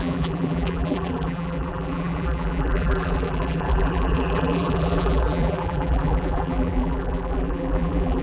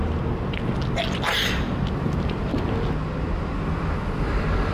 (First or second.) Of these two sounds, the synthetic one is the first